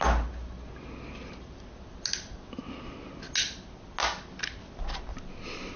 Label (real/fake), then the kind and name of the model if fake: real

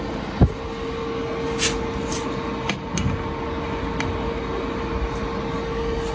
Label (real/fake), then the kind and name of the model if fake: real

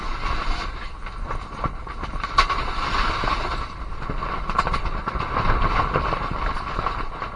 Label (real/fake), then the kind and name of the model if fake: real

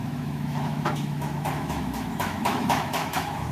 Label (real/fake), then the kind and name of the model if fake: fake, autoencoder, DAC-VAE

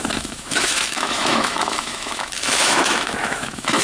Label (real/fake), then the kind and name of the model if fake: fake, autoencoder, DAC-VAE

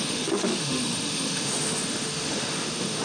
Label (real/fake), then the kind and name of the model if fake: fake, autoencoder, DAC-VAE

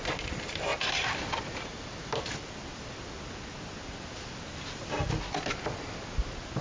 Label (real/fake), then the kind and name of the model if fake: real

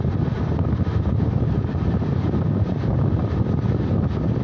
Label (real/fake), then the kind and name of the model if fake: real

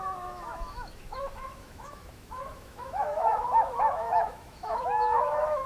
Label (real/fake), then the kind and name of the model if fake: fake, autoencoder, DAC-VAE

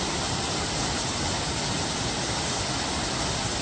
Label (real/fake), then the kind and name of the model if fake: real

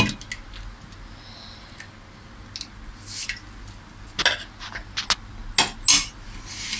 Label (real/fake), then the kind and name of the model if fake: real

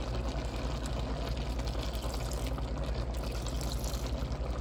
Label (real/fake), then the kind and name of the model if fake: real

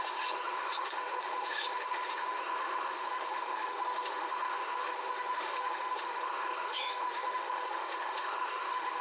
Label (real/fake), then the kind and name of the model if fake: fake, autoencoder, DAC-VAE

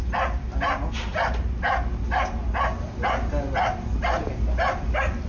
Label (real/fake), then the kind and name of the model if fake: real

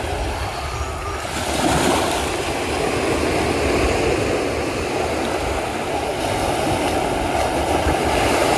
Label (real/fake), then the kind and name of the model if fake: real